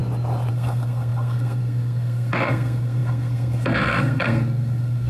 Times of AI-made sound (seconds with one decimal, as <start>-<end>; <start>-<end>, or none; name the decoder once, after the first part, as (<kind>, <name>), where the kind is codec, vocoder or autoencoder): 0.5-5.1 (codec, SNAC)